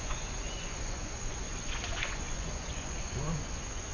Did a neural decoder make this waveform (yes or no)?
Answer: yes